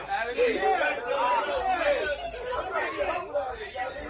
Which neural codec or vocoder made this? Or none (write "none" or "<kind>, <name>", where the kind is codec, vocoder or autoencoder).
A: none